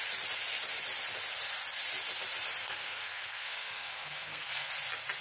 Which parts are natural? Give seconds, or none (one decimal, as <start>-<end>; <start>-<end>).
0.0-2.6; 4.7-5.2